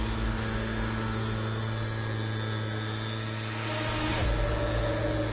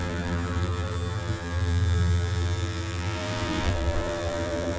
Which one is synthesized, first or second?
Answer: second